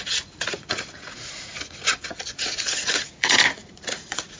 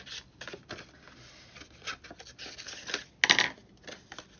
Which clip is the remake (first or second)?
first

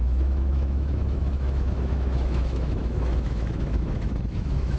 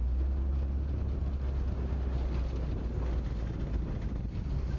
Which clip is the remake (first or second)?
first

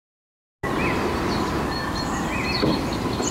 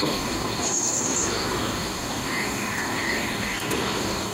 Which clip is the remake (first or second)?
second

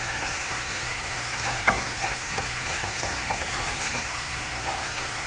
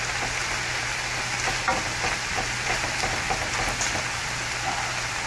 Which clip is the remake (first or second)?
first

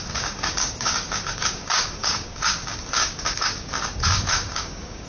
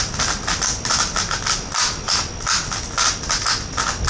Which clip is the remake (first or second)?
first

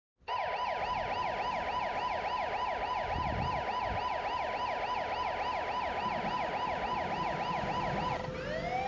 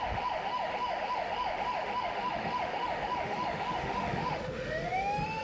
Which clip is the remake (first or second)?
second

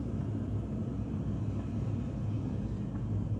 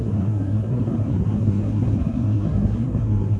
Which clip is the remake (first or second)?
second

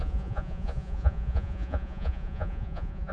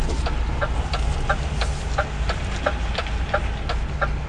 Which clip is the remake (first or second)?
first